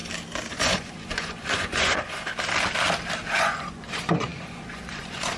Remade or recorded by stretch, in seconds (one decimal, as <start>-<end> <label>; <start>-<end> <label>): 0.0-0.5 recorded; 0.5-2.3 remade; 2.3-3.4 recorded; 3.4-5.4 remade